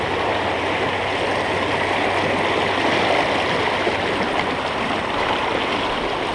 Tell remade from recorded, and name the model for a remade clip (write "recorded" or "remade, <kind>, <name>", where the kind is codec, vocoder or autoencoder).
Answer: recorded